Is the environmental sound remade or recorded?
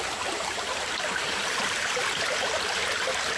recorded